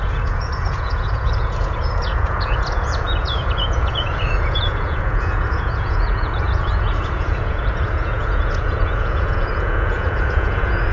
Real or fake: fake